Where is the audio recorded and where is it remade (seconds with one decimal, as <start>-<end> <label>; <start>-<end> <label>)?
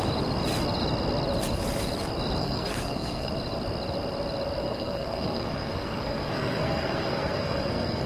0.0-2.4 recorded; 2.4-3.3 remade; 3.3-4.6 recorded; 4.6-8.1 remade